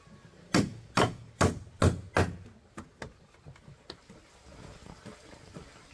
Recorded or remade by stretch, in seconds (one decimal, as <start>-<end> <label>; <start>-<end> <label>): 0.0-5.9 recorded